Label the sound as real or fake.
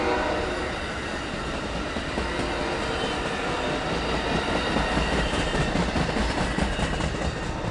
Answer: real